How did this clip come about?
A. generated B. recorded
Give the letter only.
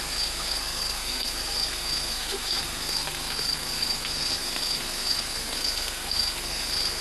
A